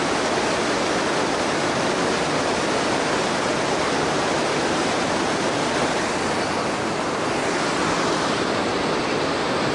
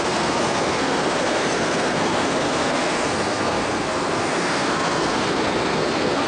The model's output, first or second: second